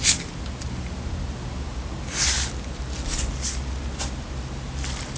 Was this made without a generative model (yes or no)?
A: yes